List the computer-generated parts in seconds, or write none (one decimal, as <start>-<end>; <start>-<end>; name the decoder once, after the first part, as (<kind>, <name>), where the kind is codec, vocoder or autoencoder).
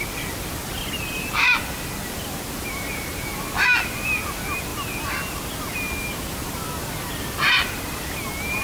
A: none